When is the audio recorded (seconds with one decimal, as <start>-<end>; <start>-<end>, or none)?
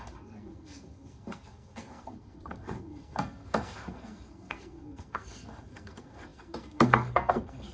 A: none